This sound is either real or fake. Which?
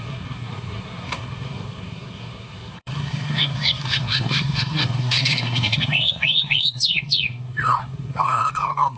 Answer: fake